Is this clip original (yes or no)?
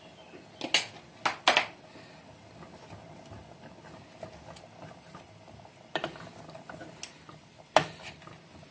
yes